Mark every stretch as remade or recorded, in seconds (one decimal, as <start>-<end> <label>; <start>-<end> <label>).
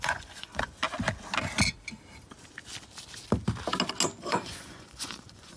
0.0-0.8 remade; 0.8-4.2 recorded; 4.2-5.6 remade